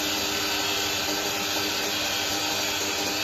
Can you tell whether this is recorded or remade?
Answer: recorded